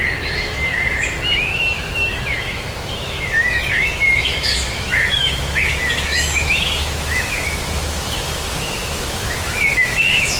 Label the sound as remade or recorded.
remade